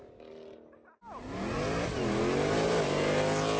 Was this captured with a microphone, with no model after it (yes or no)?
yes